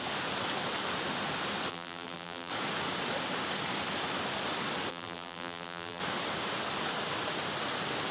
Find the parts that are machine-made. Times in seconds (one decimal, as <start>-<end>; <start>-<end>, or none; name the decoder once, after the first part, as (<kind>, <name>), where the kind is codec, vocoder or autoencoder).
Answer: 1.7-2.5 (vocoder, BigVGAN v2); 4.9-6.0